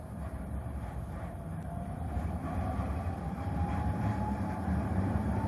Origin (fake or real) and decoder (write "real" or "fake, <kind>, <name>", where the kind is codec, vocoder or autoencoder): fake, vocoder, BigVGAN v2